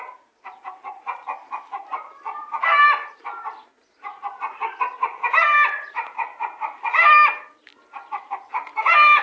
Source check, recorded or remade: recorded